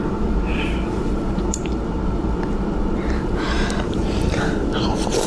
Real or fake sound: fake